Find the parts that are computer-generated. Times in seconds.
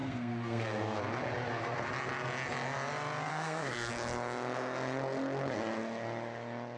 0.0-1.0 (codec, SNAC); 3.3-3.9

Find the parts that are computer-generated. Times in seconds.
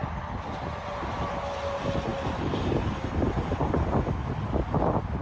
none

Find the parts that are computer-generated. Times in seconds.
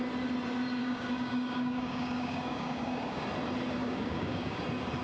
0.8-3.2 (codec, DAC); 3.8-4.6